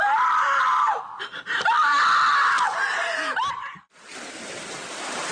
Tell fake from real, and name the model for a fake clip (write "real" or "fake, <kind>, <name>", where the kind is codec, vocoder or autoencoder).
real